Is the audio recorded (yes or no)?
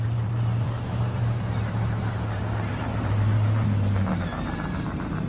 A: no